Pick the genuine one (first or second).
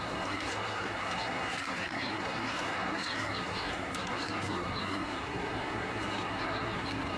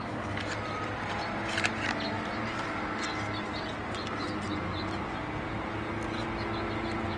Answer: second